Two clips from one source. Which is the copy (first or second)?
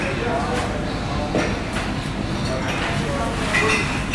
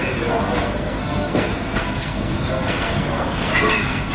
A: second